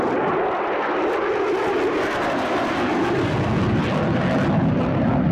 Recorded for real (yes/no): yes